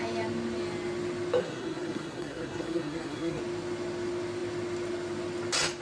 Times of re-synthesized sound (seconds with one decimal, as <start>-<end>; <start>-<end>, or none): 1.4-3.4